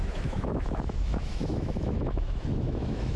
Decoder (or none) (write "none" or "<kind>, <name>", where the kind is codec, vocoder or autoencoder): autoencoder, DAC-VAE